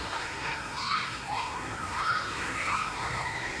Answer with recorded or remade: remade